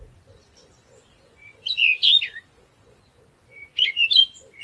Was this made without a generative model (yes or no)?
no